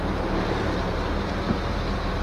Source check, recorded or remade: recorded